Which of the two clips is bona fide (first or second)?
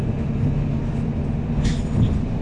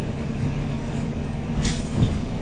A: first